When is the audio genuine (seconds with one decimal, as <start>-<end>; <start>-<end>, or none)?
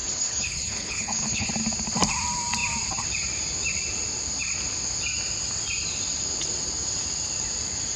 1.5-8.0